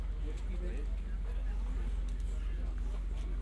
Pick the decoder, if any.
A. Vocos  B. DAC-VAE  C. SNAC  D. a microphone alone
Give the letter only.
D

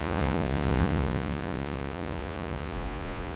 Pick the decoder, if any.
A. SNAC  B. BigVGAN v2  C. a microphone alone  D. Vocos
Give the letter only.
D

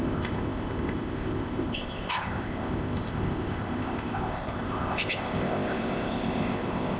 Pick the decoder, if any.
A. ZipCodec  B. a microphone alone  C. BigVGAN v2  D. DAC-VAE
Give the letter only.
A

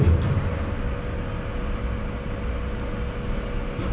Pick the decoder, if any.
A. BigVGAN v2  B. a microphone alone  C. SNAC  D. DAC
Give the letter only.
B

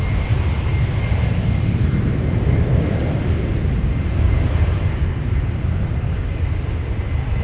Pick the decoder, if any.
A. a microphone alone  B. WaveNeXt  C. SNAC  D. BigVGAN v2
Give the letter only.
A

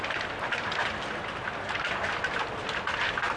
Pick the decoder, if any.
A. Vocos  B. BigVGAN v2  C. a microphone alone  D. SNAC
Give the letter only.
C